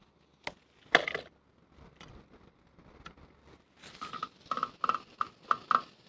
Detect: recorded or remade recorded